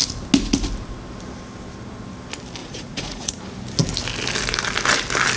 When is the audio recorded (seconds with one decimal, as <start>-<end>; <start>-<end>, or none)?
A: 0.0-2.6; 3.4-5.4